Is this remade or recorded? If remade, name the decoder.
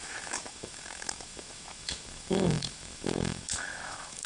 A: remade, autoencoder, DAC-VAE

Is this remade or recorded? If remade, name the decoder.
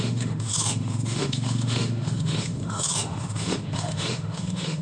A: remade, autoencoder, DAC-VAE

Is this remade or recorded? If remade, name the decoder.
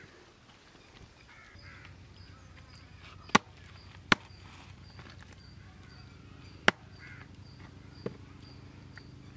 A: recorded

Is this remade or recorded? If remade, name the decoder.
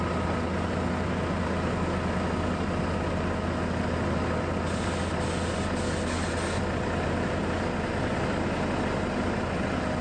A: recorded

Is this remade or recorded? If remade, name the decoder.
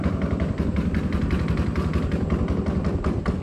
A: recorded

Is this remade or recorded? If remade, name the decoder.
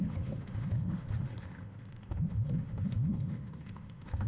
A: remade, autoencoder, DAC-VAE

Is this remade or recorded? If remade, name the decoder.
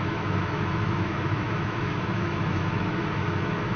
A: remade, autoencoder, DAC-VAE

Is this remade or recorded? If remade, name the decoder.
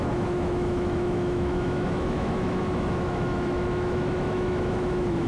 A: remade, autoencoder, DAC-VAE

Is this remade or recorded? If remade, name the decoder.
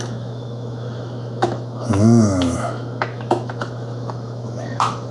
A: remade, autoencoder, DAC-VAE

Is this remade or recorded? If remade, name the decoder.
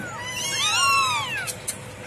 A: recorded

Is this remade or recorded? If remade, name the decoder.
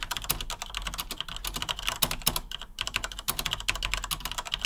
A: recorded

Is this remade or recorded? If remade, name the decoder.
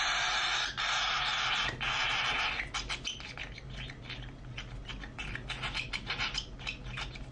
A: recorded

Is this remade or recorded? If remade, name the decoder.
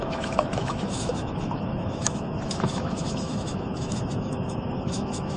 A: remade, autoencoder, DAC-VAE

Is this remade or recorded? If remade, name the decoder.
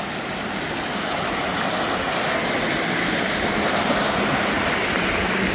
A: recorded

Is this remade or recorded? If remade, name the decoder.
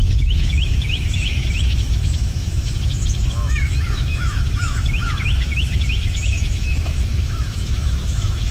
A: remade, autoencoder, DAC-VAE